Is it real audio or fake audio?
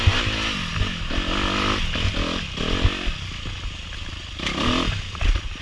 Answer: real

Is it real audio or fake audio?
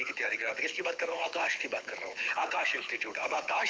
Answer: fake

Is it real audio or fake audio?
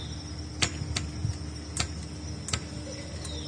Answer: real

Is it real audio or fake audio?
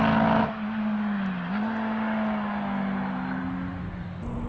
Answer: real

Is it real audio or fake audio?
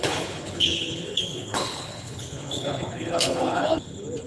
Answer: fake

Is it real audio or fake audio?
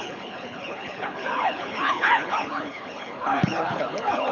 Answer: fake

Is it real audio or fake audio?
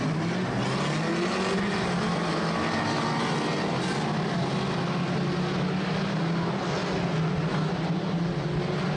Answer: real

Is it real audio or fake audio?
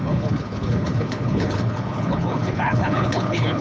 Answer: fake